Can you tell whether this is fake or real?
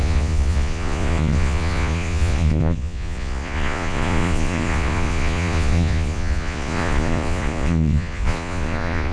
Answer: fake